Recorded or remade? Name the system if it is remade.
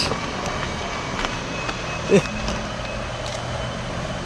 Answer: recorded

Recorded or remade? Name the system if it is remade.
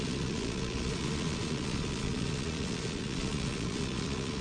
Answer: remade, vocoder, Vocos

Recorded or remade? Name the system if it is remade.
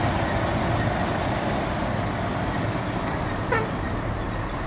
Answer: recorded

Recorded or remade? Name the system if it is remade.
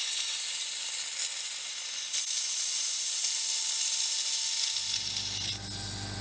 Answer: recorded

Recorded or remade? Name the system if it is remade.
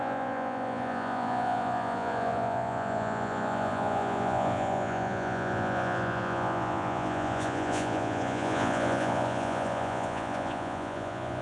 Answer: remade, vocoder, Vocos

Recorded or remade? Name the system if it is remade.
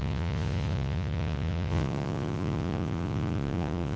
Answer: remade, vocoder, Vocos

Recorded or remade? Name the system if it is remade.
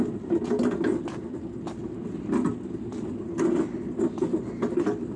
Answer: recorded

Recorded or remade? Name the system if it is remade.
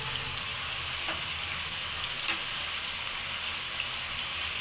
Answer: recorded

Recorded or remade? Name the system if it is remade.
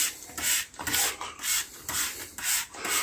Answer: recorded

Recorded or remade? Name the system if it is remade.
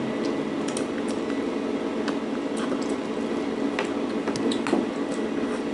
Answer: recorded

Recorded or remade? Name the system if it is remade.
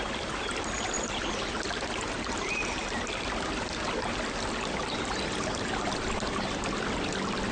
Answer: recorded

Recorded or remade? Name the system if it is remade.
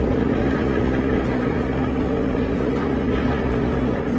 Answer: remade, vocoder, Vocos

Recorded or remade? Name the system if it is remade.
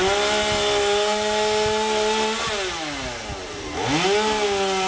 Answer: recorded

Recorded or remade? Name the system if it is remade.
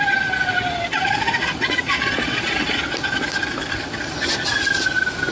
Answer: recorded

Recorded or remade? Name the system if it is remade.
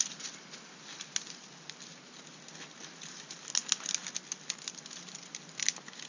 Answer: recorded